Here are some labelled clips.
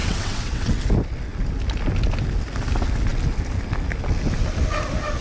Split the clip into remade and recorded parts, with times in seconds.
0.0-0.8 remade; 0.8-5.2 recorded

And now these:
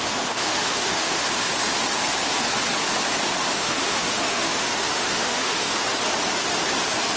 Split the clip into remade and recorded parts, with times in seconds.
0.0-1.2 remade; 1.2-3.5 recorded; 3.5-5.8 remade; 5.8-7.2 recorded

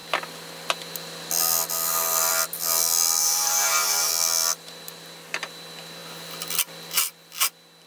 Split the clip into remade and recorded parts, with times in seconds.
0.0-3.2 recorded; 3.2-4.1 remade; 4.1-7.9 recorded